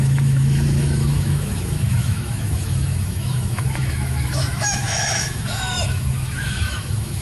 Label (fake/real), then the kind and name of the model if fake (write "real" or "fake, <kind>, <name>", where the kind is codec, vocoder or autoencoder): fake, autoencoder, DAC-VAE